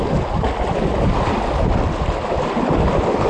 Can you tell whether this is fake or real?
real